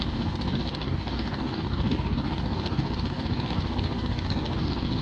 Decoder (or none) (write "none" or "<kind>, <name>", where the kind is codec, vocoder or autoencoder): codec, DAC